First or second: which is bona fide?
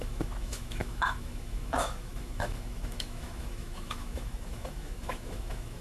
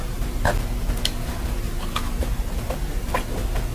second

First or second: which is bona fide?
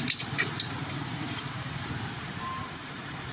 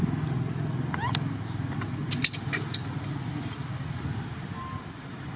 second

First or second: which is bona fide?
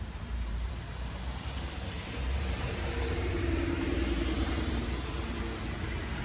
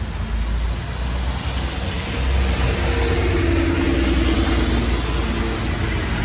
second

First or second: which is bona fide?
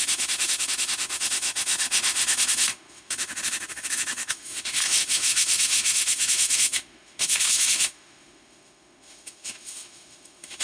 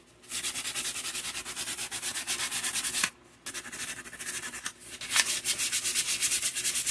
second